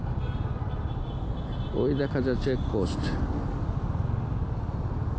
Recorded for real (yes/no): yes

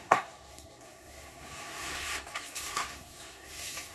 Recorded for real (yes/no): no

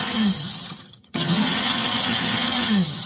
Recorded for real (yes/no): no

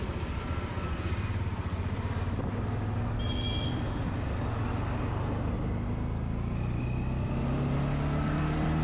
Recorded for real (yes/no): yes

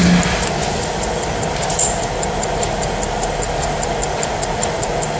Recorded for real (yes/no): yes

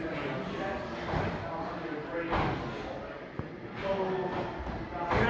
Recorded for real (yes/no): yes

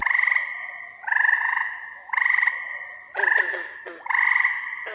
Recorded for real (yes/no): yes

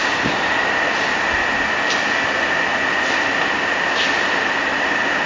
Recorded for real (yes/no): yes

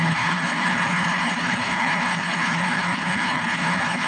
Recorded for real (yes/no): no